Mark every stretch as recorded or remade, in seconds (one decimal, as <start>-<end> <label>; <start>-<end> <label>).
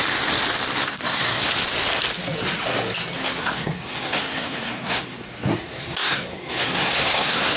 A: 0.0-0.8 recorded; 0.8-1.5 remade; 1.5-3.4 recorded; 3.4-7.6 remade